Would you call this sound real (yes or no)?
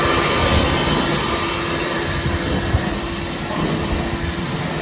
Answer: yes